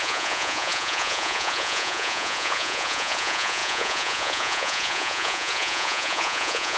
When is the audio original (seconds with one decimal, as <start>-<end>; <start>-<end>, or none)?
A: none